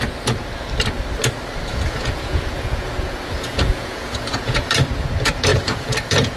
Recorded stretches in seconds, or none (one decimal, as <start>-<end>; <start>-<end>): 0.0-1.7; 4.7-5.5

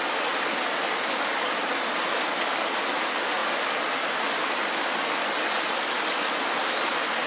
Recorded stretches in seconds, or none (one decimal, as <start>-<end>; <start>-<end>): 0.0-7.3

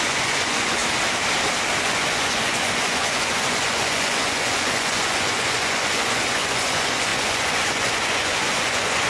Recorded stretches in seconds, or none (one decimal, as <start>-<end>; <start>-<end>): 0.8-1.8

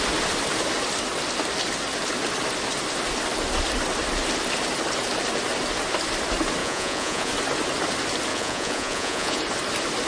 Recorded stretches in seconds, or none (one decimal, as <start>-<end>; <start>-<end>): 0.0-6.6; 7.3-8.3; 9.4-10.1

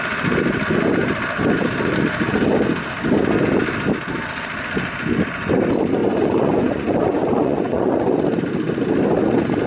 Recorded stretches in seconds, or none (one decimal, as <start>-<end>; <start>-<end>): 0.0-6.0; 8.1-9.7

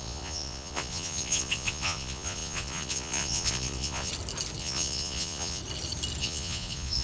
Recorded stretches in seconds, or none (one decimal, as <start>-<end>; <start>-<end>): 4.1-4.6; 5.6-6.2